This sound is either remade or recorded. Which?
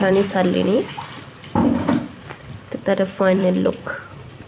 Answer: remade